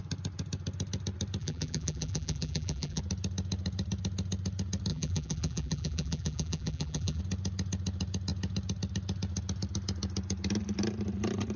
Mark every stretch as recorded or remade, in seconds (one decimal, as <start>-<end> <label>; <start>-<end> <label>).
0.0-1.4 recorded; 1.4-3.0 remade; 3.0-4.9 recorded; 4.9-7.2 remade; 7.2-11.6 recorded